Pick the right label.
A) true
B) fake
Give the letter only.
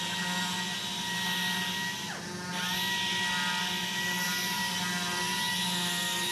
A